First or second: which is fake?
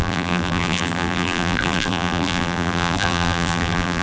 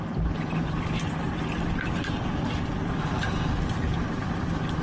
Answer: first